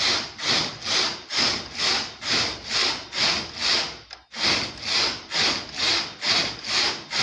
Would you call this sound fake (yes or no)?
no